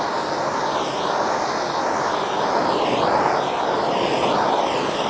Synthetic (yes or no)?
no